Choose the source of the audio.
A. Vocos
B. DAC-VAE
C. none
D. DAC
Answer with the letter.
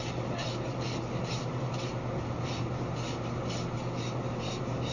C